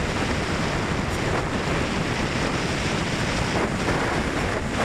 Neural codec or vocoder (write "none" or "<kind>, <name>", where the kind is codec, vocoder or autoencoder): none